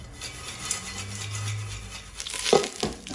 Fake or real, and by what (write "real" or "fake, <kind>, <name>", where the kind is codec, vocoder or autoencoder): real